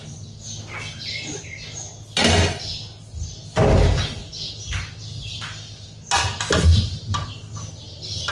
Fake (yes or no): no